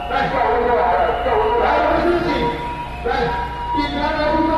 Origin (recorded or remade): recorded